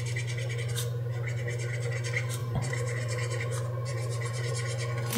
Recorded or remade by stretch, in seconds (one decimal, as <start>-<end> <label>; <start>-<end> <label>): 0.0-2.4 recorded; 2.4-3.4 remade; 3.4-3.9 recorded; 3.9-4.5 remade; 4.5-5.2 recorded